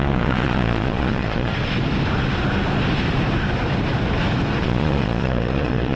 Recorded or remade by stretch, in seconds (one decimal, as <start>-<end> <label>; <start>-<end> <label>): 0.0-1.5 remade; 1.5-4.6 recorded; 4.6-6.0 remade